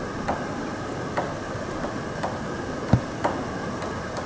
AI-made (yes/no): no